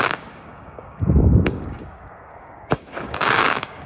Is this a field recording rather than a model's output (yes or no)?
no